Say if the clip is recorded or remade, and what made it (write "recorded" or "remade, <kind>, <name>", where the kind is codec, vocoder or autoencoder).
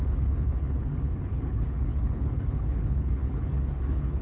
remade, codec, HILCodec